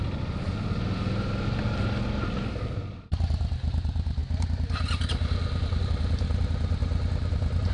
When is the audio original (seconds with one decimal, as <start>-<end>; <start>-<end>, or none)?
0.0-7.7